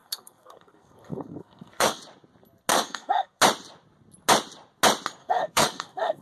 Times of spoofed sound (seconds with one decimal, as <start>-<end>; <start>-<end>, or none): 0.0-2.0; 2.7-3.4; 5.2-6.2